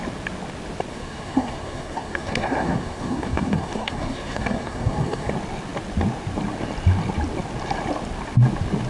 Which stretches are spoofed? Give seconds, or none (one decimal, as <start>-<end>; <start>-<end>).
0.9-5.3